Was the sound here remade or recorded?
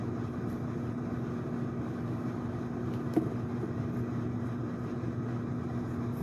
recorded